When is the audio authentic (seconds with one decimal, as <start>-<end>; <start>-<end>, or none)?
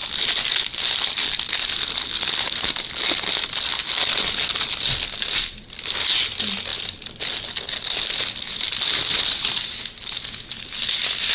0.0-11.3